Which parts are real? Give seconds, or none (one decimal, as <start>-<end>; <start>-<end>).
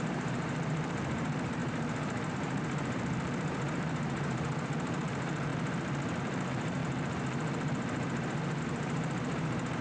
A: 5.5-6.2; 6.8-8.6